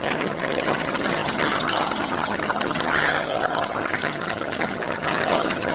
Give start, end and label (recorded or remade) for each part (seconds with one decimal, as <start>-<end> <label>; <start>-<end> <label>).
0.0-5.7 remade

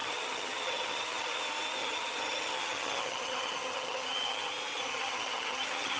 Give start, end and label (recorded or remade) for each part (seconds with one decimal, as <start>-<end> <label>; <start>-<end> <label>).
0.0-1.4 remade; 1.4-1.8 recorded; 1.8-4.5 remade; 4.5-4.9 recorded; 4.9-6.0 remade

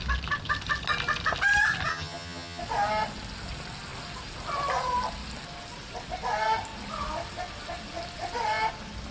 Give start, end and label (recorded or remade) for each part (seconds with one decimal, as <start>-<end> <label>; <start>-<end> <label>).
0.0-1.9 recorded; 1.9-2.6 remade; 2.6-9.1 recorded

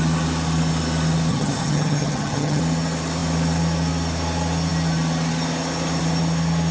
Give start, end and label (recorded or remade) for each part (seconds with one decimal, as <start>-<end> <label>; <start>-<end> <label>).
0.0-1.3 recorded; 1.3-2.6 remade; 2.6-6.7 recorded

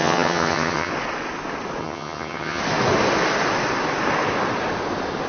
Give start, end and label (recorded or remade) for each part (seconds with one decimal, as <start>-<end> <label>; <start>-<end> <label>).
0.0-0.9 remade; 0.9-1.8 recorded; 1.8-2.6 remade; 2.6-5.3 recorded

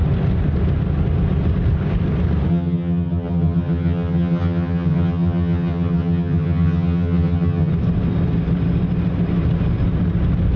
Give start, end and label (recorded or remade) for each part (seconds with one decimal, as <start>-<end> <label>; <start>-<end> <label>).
0.0-2.5 recorded; 2.5-7.7 remade; 7.7-10.6 recorded